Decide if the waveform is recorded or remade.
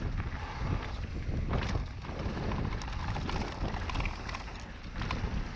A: recorded